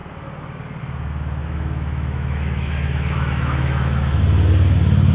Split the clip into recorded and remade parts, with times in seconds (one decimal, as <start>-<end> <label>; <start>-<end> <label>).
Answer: 0.0-1.4 recorded; 1.4-4.2 remade; 4.2-5.1 recorded